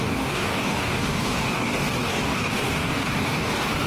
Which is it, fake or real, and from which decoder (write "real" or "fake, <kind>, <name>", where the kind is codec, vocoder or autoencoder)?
fake, codec, DAC